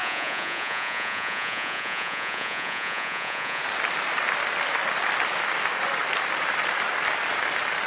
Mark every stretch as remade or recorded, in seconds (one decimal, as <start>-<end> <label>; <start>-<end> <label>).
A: 0.0-3.6 remade; 3.6-7.9 recorded